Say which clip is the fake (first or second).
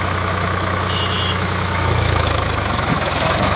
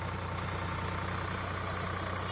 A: first